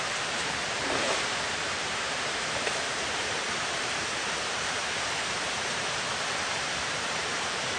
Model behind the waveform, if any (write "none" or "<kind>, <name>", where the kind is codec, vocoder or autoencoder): vocoder, BigVGAN v2